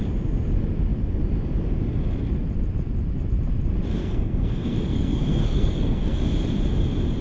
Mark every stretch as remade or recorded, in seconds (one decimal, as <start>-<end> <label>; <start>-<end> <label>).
0.0-4.0 recorded; 4.0-6.2 remade; 6.2-7.2 recorded